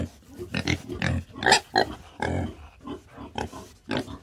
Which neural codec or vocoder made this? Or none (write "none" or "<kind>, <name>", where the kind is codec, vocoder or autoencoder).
none